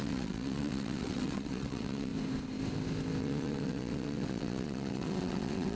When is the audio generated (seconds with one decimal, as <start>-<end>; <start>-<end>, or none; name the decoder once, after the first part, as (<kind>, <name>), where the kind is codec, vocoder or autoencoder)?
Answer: 0.0-2.1 (vocoder, WaveNeXt); 3.2-5.8